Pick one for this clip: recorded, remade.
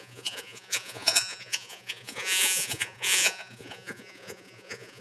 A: remade